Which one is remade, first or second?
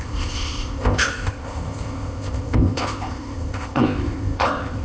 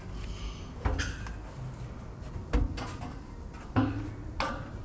first